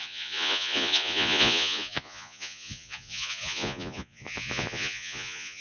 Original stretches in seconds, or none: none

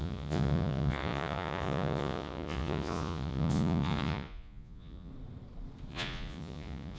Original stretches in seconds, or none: 5.1-5.9

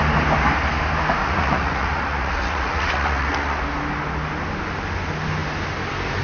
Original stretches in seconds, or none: 0.0-1.2; 3.6-6.2

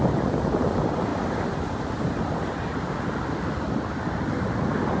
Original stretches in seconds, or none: 0.0-5.0